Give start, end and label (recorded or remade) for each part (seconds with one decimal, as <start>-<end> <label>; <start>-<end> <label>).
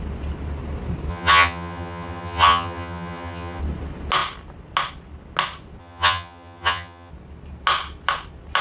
0.0-1.1 recorded; 1.1-3.6 remade; 3.6-5.8 recorded; 5.8-7.1 remade; 7.1-8.6 recorded